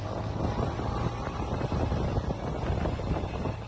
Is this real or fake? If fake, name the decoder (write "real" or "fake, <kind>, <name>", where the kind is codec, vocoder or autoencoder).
real